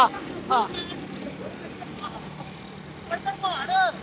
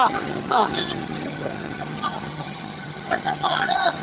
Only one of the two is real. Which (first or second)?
first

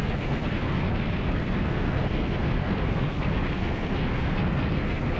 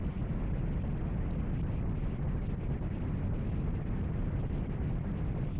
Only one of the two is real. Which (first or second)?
second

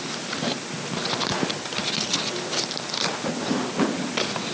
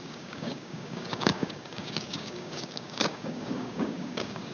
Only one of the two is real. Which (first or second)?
first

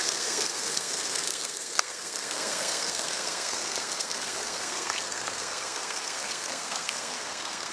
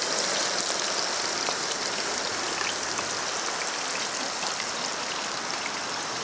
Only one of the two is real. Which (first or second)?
second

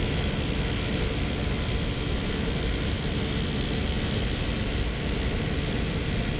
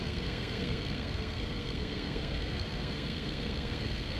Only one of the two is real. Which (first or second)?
first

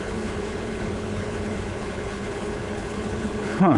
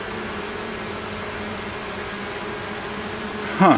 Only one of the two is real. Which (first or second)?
second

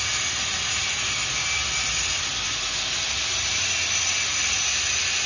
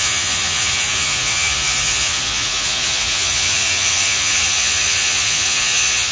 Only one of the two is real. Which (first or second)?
first